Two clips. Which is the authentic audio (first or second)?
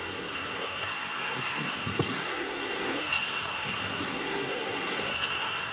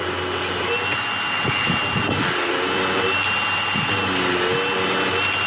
second